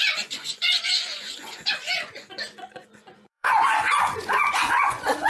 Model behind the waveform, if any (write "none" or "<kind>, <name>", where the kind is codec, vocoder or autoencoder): vocoder, Vocos